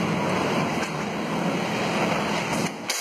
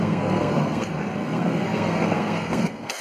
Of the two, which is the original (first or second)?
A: first